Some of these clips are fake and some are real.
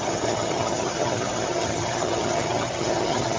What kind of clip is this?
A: fake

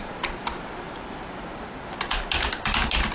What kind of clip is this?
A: fake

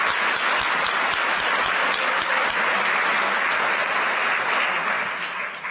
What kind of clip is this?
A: real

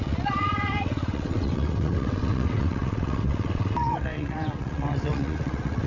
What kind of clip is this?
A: fake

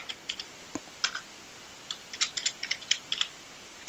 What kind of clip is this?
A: real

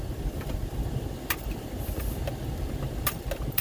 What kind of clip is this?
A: fake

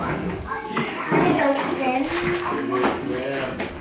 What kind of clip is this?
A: fake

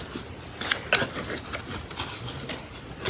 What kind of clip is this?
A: real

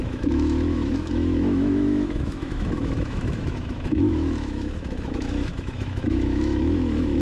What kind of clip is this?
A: fake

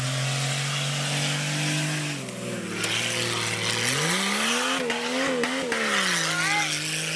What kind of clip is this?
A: real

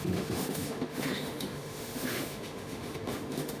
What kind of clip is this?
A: fake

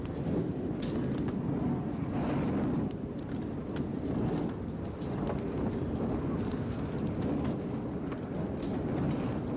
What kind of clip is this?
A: real